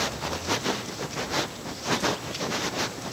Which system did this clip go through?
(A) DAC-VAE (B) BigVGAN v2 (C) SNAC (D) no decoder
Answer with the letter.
B